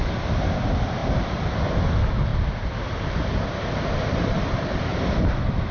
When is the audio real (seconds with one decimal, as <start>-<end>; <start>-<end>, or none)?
0.0-1.0; 1.5-5.7